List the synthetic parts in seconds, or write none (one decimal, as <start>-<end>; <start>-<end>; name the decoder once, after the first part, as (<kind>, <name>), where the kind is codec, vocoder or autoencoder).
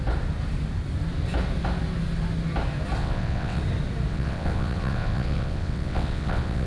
3.0-3.6 (vocoder, WaveNeXt); 4.1-6.7